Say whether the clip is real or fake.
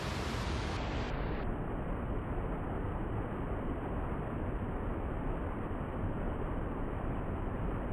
real